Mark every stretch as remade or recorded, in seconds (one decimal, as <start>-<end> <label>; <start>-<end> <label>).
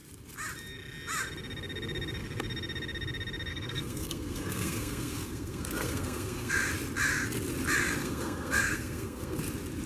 0.0-3.5 recorded; 3.5-6.5 remade; 6.5-8.0 recorded; 8.0-9.4 remade; 9.4-9.9 recorded